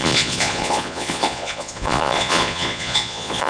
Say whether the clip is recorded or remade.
remade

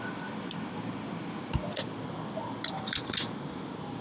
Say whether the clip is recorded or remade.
recorded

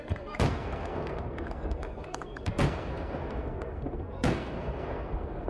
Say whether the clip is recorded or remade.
remade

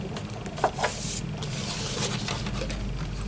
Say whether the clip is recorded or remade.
recorded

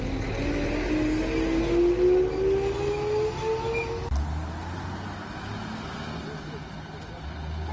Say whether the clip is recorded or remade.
recorded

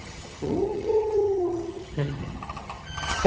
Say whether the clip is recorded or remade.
remade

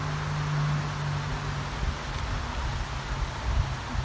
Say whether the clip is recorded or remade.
recorded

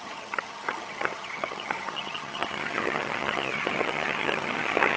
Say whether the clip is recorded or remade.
remade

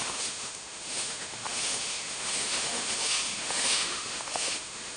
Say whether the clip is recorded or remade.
remade